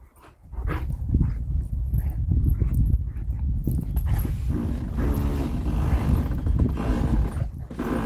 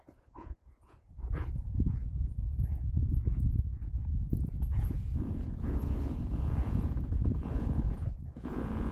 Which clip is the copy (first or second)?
second